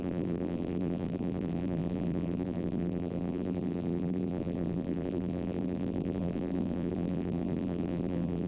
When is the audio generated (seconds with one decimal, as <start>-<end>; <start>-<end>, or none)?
0.0-8.5